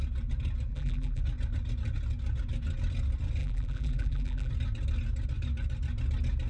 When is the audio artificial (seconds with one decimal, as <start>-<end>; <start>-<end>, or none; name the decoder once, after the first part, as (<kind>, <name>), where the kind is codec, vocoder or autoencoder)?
0.7-1.2 (vocoder, BigVGAN v2); 3.4-4.5